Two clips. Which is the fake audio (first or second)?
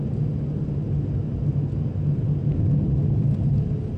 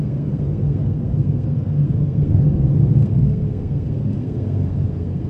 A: second